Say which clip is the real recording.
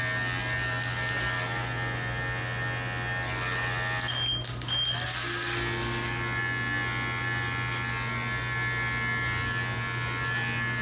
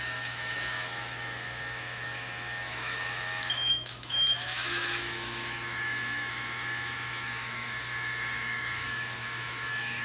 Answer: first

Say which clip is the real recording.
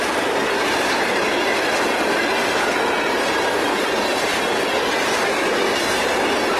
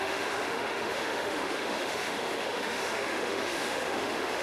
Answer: first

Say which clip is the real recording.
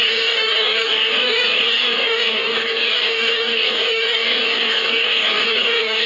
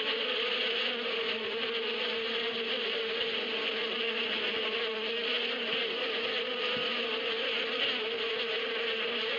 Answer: second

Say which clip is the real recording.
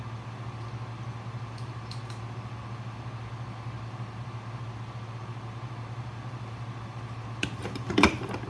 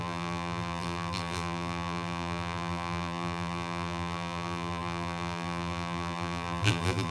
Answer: first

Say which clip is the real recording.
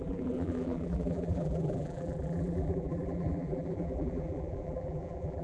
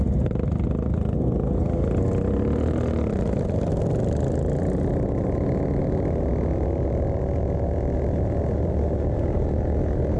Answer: second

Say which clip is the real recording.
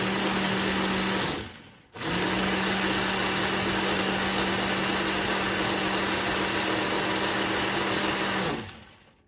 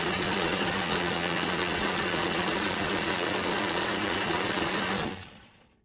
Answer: first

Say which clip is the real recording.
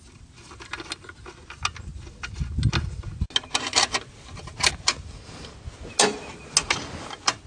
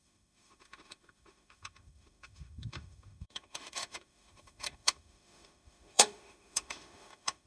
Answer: first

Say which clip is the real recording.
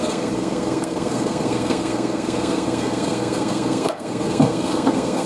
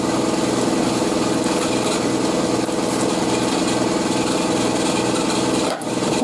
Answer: second